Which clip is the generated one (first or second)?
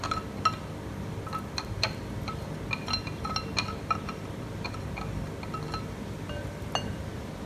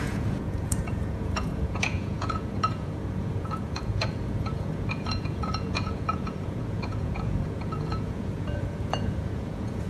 second